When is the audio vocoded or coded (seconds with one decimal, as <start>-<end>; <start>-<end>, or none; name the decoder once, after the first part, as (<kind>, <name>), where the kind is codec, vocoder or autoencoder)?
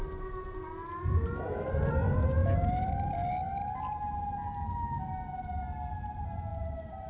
none